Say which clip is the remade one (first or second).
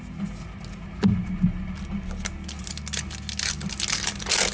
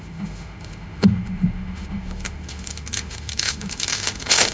second